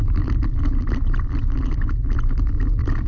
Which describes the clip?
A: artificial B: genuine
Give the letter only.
B